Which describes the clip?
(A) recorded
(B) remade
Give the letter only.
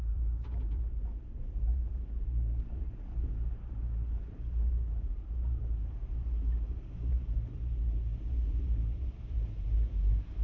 B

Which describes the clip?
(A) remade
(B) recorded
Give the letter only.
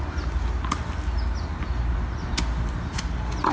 B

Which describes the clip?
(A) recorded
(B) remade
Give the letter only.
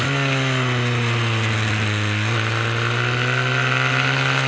A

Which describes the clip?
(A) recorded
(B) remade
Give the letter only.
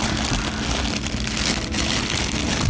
A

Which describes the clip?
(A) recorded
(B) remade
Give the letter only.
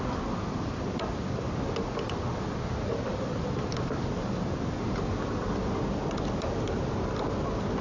A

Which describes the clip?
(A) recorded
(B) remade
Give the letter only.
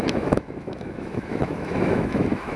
B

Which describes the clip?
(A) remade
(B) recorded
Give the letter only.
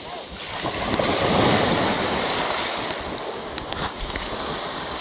B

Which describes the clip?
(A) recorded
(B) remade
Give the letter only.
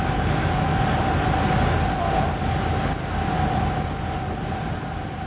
A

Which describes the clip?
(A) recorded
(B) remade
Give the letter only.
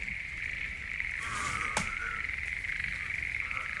A